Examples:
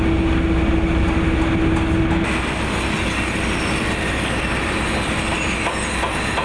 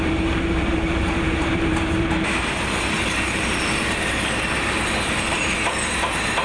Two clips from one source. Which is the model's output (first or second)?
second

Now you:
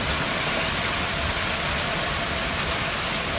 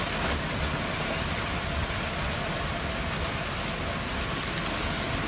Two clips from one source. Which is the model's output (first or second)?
first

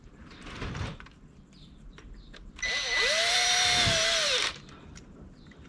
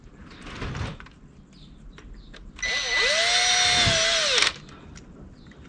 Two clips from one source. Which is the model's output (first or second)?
first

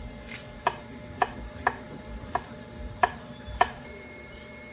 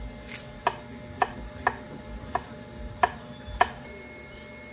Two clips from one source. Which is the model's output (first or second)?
first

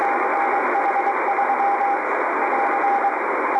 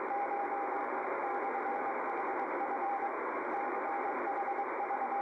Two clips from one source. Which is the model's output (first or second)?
second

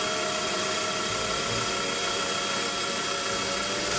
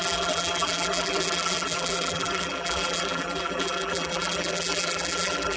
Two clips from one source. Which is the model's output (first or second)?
second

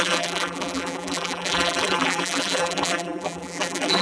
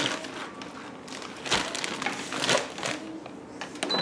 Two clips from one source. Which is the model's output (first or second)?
first